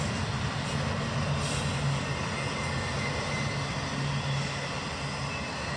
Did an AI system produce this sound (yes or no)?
no